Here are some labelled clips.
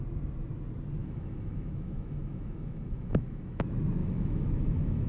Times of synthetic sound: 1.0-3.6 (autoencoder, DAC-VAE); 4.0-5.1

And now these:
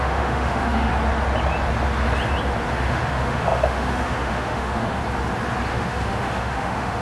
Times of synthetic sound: 0.0-0.9 (autoencoder, DAC-VAE); 2.7-5.0; 5.7-7.0

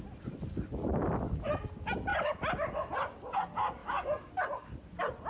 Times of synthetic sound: 3.8-4.3 (autoencoder, DAC-VAE)

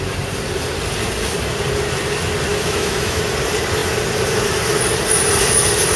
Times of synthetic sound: 2.5-3.2 (autoencoder, DAC-VAE)